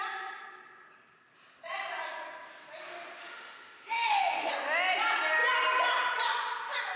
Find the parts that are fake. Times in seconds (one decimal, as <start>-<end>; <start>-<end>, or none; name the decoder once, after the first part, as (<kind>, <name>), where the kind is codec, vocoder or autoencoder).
3.2-4.5 (autoencoder, DAC-VAE)